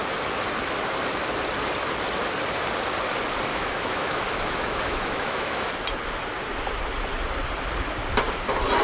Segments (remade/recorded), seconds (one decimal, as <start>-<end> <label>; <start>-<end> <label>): 0.0-3.5 recorded; 3.5-5.7 remade; 5.7-8.8 recorded